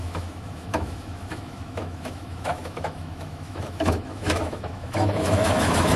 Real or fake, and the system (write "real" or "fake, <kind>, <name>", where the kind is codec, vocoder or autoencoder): fake, autoencoder, DAC-VAE